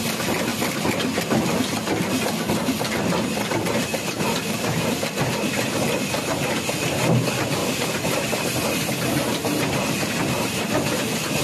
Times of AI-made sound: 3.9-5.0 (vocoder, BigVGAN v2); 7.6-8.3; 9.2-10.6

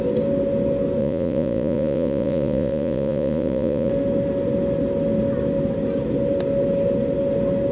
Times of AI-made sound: 1.0-3.9 (vocoder, Vocos)

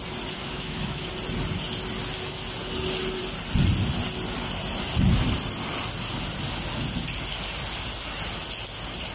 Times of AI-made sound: 0.4-1.1 (autoencoder, DAC-VAE)

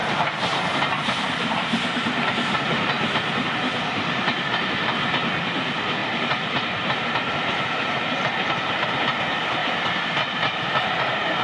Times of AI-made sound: 0.0-3.5 (vocoder, BigVGAN v2); 6.0-8.2; 9.6-10.3

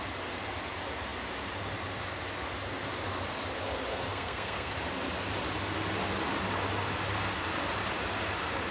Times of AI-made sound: 3.9-4.7 (codec, SNAC)